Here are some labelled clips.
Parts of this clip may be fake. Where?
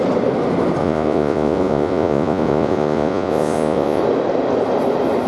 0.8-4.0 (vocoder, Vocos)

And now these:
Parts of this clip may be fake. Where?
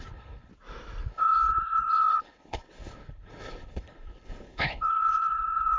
0.0-0.5 (codec, HILCodec); 1.1-5.8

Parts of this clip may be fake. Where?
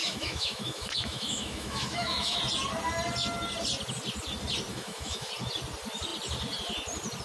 0.0-2.4 (autoencoder, DAC-VAE); 4.7-5.3